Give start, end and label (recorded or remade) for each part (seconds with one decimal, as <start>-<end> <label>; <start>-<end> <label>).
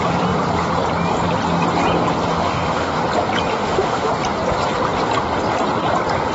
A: 0.0-2.3 recorded; 2.3-3.0 remade; 3.0-3.5 recorded; 3.5-4.1 remade; 4.1-6.3 recorded